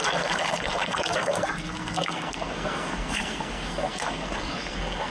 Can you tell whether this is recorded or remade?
remade